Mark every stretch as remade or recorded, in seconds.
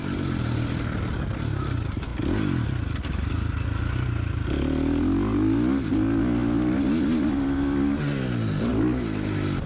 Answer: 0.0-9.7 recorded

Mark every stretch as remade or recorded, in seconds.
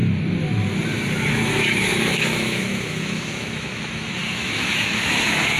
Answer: 0.0-1.3 recorded; 1.3-5.6 remade